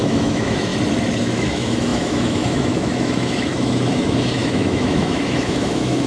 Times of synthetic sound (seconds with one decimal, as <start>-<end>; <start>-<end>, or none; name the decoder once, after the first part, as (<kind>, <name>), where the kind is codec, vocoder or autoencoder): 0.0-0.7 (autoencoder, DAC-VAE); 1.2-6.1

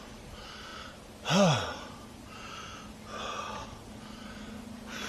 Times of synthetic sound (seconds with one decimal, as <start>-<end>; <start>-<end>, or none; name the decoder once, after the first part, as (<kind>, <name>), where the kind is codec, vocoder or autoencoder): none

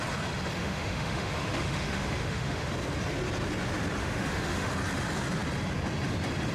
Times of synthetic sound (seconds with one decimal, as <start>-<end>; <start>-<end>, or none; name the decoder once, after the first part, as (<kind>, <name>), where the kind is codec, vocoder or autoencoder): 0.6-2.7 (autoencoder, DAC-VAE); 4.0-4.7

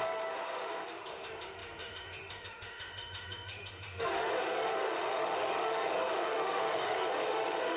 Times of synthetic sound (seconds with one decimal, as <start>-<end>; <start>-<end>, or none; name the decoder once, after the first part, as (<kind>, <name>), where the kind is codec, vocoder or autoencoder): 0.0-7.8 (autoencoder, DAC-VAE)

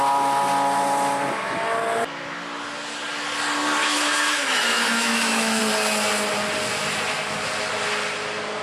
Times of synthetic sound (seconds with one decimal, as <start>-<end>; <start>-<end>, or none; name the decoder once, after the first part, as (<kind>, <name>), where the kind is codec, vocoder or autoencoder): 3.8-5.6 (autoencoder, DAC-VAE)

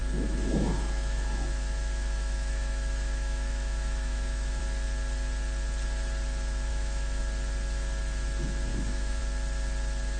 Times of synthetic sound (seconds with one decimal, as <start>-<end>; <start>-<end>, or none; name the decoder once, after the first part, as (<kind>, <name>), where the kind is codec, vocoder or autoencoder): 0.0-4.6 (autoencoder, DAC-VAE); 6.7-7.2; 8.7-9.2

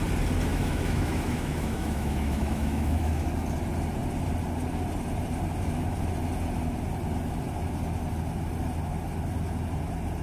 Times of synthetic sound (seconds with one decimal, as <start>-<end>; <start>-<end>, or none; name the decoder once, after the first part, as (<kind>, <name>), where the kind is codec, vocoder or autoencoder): 0.5-3.1 (autoencoder, DAC-VAE)